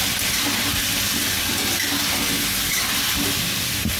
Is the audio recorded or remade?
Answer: recorded